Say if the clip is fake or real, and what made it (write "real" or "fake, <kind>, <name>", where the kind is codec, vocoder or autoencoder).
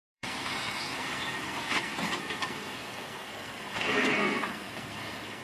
fake, codec, SNAC